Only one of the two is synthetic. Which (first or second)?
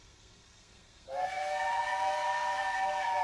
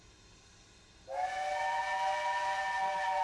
first